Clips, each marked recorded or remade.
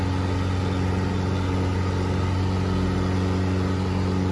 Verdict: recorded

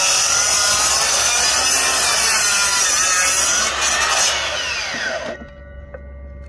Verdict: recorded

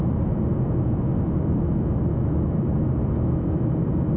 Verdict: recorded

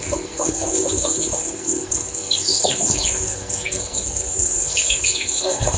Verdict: remade